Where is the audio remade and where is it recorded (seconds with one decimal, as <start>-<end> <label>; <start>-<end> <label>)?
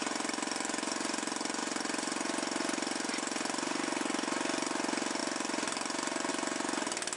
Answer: 0.0-7.2 recorded